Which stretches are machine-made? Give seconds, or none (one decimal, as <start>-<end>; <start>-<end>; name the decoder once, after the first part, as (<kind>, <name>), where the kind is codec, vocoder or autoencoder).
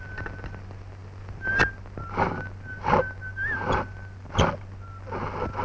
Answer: 3.3-4.5 (vocoder, BigVGAN v2)